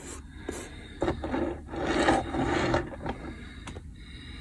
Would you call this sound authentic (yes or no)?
yes